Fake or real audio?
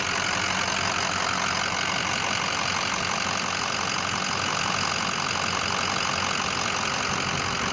real